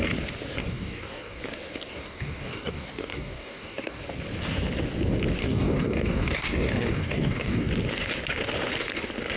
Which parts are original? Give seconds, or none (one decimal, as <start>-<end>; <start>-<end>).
0.0-0.6; 1.4-1.9; 4.0-5.4; 7.7-9.4